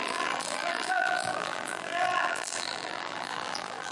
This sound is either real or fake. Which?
fake